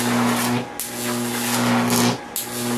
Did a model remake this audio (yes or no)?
no